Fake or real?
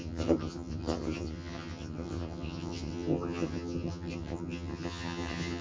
fake